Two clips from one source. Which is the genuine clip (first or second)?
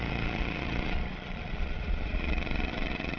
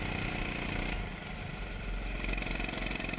second